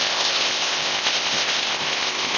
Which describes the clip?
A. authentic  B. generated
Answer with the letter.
B